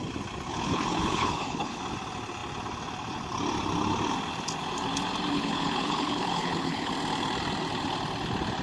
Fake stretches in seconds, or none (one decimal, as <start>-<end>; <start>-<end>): 0.5-1.8; 5.3-6.9